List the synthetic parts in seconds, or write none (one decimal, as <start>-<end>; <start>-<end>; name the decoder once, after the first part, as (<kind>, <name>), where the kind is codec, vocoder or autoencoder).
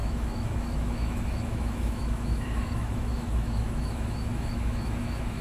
0.0-5.4 (autoencoder, DAC-VAE)